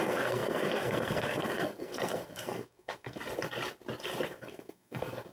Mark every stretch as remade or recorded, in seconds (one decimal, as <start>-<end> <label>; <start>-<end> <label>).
0.0-3.2 remade; 3.2-4.3 recorded; 4.3-5.3 remade

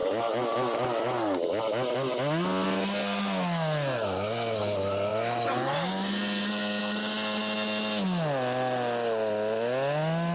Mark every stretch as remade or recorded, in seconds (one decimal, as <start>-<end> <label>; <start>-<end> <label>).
0.0-10.3 recorded

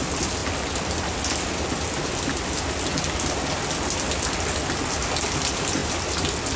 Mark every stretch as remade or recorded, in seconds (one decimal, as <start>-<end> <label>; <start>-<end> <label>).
0.0-6.6 recorded

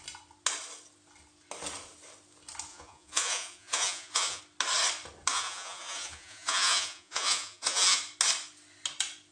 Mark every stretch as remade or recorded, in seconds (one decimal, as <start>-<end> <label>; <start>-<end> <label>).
0.0-2.7 recorded; 2.7-4.4 remade; 4.4-5.3 recorded; 5.3-8.0 remade; 8.0-9.3 recorded

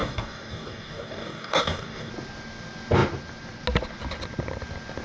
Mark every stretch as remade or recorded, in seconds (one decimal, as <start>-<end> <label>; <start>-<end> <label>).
0.0-2.1 remade; 2.1-5.0 recorded

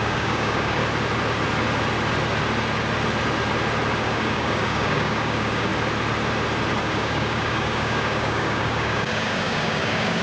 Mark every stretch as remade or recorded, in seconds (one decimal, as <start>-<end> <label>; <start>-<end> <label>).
0.0-0.8 remade; 0.8-4.0 recorded; 4.0-5.7 remade; 5.7-6.8 recorded; 6.8-10.2 remade

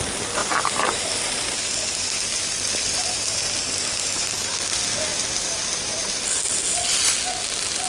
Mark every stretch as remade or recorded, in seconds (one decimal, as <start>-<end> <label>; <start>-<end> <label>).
0.0-0.4 recorded; 0.4-4.4 remade; 4.4-5.1 recorded; 5.1-6.2 remade; 6.2-7.9 recorded